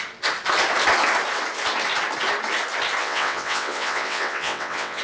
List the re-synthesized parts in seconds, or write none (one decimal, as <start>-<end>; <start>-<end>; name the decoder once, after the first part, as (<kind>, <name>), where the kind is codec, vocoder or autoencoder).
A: 3.0-5.0 (vocoder, WaveNeXt)